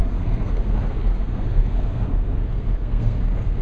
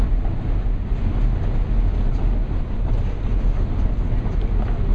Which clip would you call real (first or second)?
second